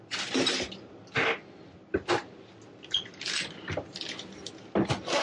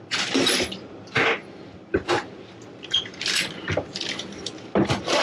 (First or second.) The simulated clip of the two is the second